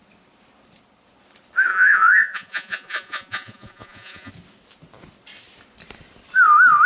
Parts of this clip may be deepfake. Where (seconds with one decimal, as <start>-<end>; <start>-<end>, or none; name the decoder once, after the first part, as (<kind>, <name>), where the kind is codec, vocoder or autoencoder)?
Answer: 1.7-4.3 (vocoder, Vocos)